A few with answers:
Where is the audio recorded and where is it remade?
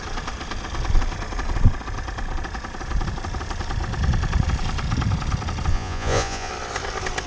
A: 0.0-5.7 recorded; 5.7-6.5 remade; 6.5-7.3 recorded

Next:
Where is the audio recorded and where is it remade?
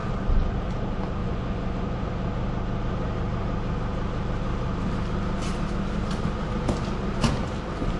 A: 0.0-1.2 recorded; 1.2-2.1 remade; 2.1-8.0 recorded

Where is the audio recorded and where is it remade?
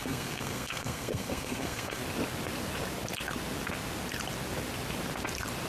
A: 0.0-2.0 remade; 2.0-5.7 recorded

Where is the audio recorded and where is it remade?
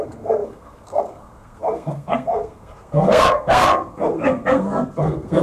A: 0.0-5.4 remade